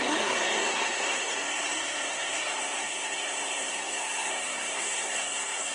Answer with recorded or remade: remade